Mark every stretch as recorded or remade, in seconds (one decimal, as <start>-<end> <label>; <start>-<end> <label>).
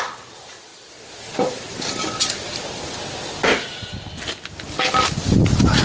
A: 0.0-5.8 recorded